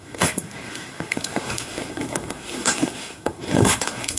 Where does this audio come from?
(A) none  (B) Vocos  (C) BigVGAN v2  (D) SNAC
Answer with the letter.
D